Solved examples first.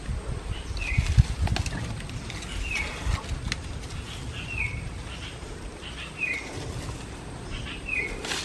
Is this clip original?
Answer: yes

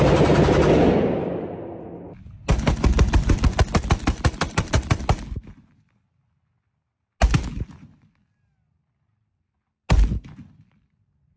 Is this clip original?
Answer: yes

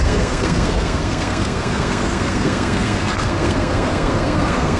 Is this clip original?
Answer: no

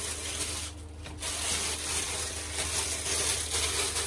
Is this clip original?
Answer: yes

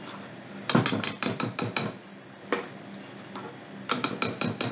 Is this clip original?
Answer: yes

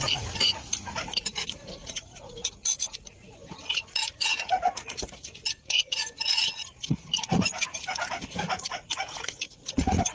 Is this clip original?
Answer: no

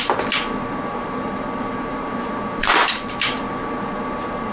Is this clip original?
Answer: no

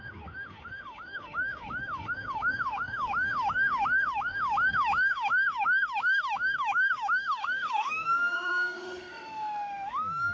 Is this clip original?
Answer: no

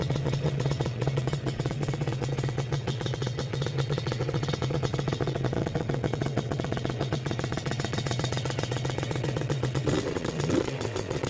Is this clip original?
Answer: no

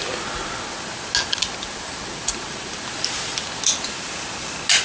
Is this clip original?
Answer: yes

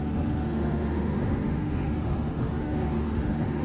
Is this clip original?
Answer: no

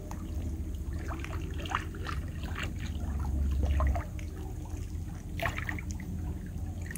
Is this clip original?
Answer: yes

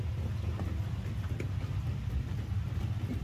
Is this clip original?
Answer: yes